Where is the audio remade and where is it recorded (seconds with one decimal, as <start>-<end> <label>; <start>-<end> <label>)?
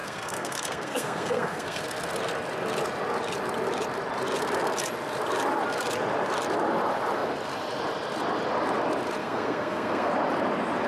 0.0-1.8 remade; 1.8-9.2 recorded; 9.2-10.1 remade; 10.1-10.9 recorded